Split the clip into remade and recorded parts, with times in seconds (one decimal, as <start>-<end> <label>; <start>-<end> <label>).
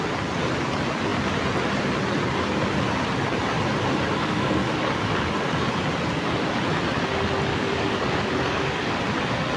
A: 0.0-4.2 recorded; 4.2-5.3 remade; 5.3-7.5 recorded; 7.5-8.9 remade; 8.9-9.6 recorded